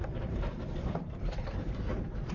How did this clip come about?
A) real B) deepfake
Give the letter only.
B